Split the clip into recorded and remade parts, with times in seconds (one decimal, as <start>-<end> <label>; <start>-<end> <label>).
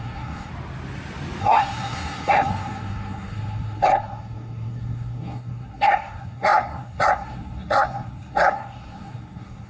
0.0-0.5 remade; 0.5-1.4 recorded; 1.4-9.7 remade